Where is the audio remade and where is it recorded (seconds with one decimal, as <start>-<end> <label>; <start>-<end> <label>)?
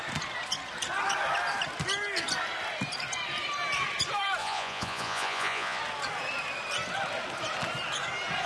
0.0-4.4 recorded; 4.4-5.8 remade; 5.8-8.5 recorded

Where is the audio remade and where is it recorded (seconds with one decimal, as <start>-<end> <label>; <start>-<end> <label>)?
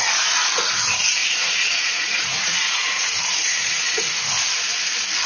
0.0-1.2 recorded; 1.2-4.4 remade; 4.4-5.3 recorded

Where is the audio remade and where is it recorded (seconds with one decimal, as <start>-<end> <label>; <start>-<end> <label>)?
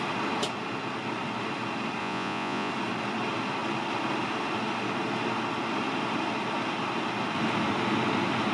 0.0-2.0 recorded; 2.0-2.7 remade; 2.7-8.5 recorded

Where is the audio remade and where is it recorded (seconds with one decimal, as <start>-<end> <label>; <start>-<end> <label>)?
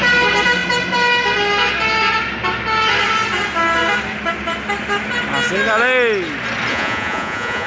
0.0-6.7 recorded; 6.7-7.7 remade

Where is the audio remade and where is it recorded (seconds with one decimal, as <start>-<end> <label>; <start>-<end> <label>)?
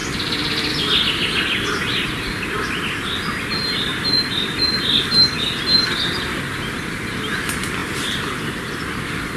0.0-9.4 recorded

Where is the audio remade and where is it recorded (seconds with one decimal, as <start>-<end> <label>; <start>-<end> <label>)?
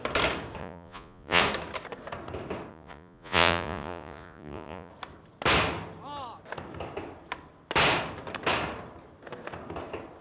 0.0-0.6 recorded; 0.6-1.4 remade; 1.4-2.7 recorded; 2.7-4.9 remade; 4.9-10.2 recorded